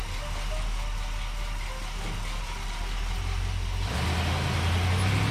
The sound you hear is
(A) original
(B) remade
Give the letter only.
A